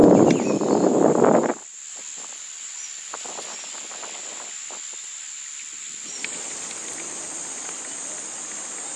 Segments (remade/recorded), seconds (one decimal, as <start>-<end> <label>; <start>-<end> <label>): 0.0-9.0 recorded